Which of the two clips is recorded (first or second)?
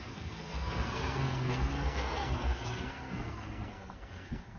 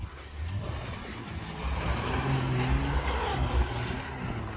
second